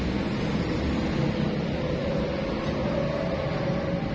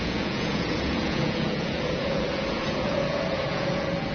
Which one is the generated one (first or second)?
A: second